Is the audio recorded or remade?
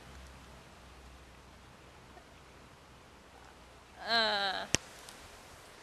recorded